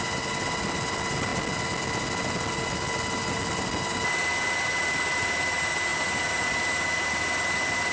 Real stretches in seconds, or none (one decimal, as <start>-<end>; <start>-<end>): 0.0-7.9